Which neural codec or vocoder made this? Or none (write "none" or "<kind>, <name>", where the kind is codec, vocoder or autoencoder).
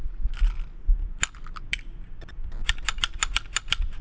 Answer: vocoder, BigVGAN v2